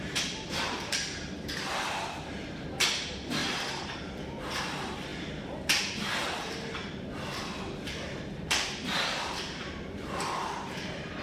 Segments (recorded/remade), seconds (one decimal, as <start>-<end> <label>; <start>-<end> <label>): 0.0-3.4 recorded; 3.4-4.0 remade; 4.0-11.2 recorded